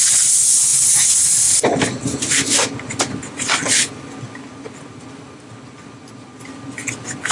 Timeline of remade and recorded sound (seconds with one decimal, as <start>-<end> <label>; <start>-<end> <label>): 0.0-7.3 recorded